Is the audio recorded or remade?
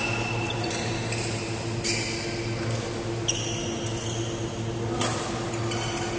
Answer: recorded